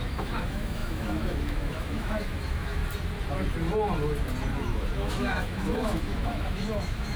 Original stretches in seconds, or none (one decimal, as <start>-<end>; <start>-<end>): 2.8-4.6

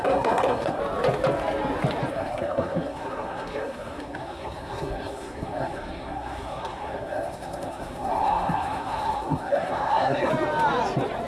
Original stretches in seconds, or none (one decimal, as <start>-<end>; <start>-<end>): 0.8-2.1; 10.3-11.3

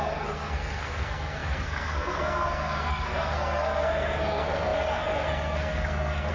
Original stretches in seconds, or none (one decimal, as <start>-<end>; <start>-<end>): none

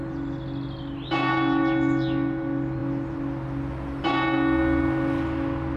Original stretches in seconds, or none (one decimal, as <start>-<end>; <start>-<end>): 0.0-5.8

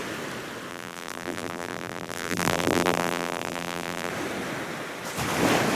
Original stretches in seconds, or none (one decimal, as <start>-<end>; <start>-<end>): 0.0-0.7; 4.1-5.7

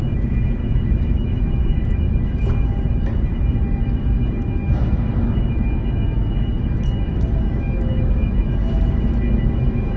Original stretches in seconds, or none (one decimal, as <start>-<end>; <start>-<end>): none

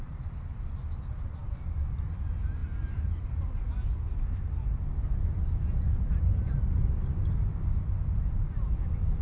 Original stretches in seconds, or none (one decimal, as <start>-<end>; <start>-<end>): 0.0-9.2

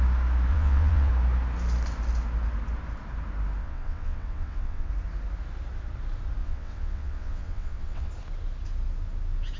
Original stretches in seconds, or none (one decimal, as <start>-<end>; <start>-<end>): 0.0-0.5; 1.1-3.6; 4.9-6.4; 8.1-9.6